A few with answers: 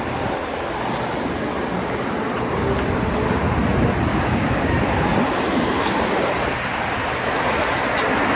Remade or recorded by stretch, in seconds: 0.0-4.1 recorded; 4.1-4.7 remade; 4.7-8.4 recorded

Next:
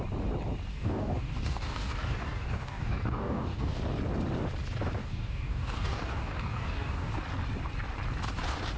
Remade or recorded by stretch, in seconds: 0.0-0.7 recorded; 0.7-3.8 remade; 3.8-5.0 recorded; 5.0-7.1 remade; 7.1-8.8 recorded